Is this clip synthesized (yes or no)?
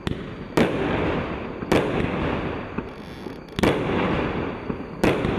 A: no